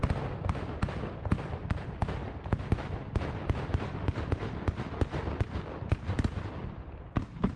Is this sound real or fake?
real